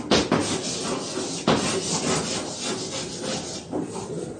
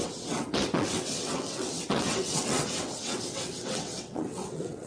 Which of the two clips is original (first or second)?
first